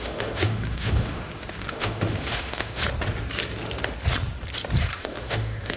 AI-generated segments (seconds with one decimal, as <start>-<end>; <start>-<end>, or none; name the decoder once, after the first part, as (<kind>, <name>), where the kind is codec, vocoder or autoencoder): 0.0-2.8 (autoencoder, DAC-VAE); 5.0-5.8